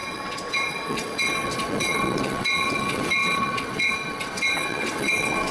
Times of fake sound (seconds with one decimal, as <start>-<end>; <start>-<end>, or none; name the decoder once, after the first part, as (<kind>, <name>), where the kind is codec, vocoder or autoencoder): 0.0-5.5 (vocoder, WaveNeXt)

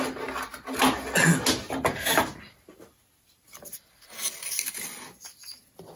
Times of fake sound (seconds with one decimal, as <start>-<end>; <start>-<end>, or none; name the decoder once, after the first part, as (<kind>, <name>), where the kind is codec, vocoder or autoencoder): none

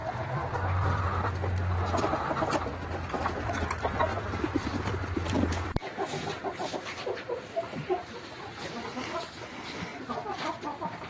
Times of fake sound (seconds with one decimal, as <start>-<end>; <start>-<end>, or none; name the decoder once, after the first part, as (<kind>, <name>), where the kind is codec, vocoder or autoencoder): 0.0-1.0 (vocoder, BigVGAN v2); 2.7-3.5; 4.1-7.8

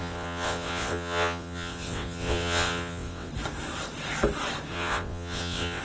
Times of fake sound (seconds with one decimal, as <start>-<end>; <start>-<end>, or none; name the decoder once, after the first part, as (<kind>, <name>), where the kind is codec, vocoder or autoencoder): 0.0-3.3 (vocoder, WaveNeXt); 4.7-5.8

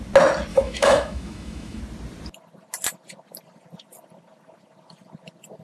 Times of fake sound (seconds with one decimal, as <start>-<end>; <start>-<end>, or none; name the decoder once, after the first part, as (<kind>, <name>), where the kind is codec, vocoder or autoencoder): 0.5-1.8 (autoencoder, DAC-VAE)

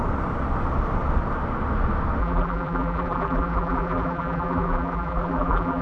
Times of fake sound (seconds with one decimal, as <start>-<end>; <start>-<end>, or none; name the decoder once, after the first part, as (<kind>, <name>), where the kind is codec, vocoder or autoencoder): 2.2-5.8 (vocoder, BigVGAN v2)

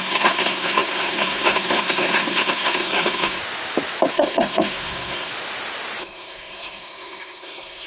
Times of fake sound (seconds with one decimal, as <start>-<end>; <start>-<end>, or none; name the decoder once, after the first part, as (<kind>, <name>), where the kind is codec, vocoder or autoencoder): 0.0-3.4 (codec, SNAC); 4.1-5.3; 6.0-7.9